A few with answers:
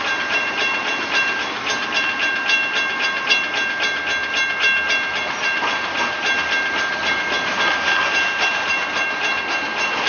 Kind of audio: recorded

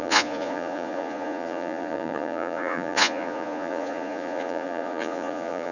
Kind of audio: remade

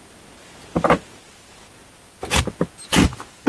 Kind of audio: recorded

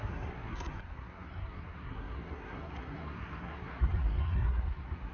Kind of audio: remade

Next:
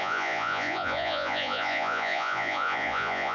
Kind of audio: remade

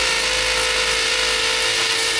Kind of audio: recorded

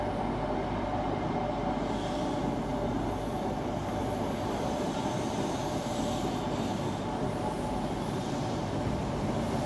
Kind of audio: recorded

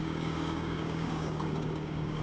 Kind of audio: remade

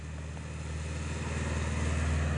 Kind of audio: recorded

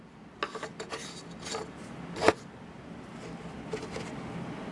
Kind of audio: recorded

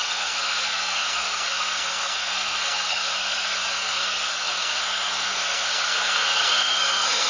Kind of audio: remade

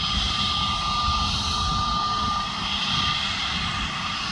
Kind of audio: recorded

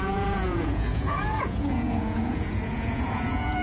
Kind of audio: remade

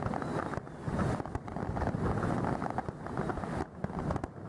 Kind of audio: recorded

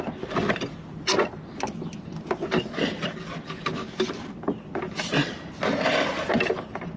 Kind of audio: recorded